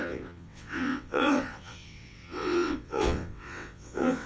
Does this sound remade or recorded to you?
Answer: remade